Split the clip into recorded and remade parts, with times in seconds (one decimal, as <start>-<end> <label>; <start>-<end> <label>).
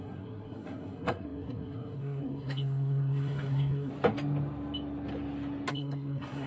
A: 0.0-3.9 remade; 3.9-5.7 recorded; 5.7-6.5 remade